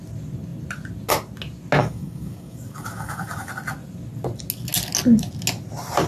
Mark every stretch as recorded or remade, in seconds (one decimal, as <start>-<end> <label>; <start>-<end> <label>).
0.0-1.8 recorded; 1.8-3.5 remade; 3.5-6.1 recorded